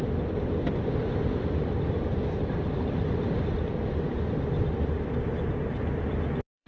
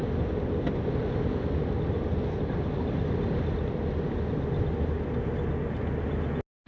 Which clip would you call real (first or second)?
second